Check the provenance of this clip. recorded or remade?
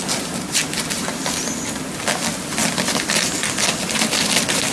recorded